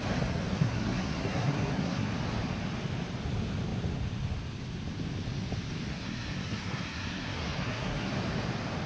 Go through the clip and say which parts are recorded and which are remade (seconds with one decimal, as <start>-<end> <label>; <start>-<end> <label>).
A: 0.0-0.5 recorded; 0.5-2.1 remade; 2.1-5.9 recorded; 5.9-8.1 remade; 8.1-8.9 recorded